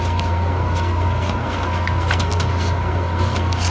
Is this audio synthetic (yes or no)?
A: yes